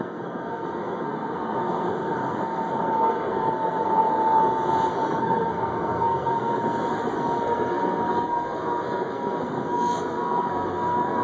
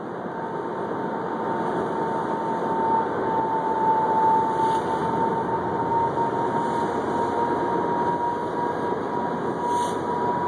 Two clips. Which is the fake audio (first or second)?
first